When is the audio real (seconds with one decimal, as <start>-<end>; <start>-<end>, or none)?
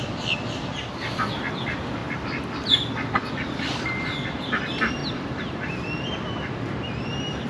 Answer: 2.0-3.3